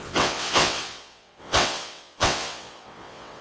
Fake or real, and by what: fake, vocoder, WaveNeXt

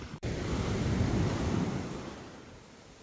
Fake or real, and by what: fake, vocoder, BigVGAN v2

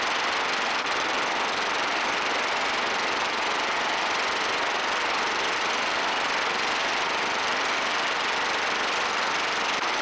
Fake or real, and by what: fake, vocoder, BigVGAN v2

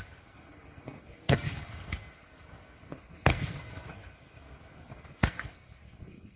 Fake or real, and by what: fake, codec, SNAC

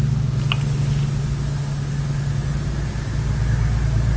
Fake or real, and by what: real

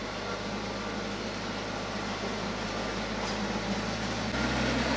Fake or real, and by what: real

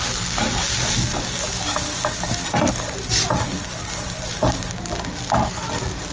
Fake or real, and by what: real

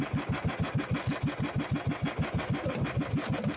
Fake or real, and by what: real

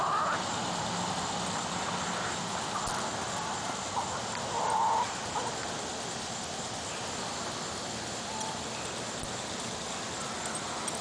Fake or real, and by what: real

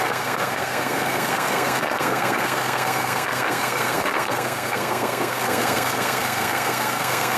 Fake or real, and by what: fake, codec, SNAC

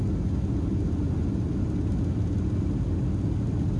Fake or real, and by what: real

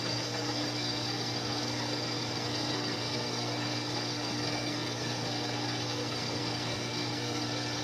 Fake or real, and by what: fake, codec, SNAC